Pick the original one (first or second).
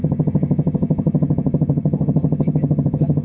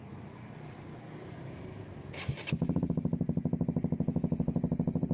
second